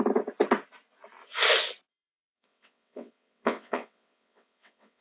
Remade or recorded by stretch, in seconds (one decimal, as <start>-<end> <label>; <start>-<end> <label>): 0.0-1.9 recorded; 1.9-5.0 remade